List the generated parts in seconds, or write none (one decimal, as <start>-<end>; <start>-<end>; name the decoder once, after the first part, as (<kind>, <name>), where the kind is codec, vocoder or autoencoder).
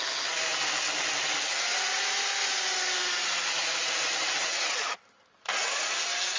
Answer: none